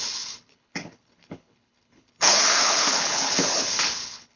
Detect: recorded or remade remade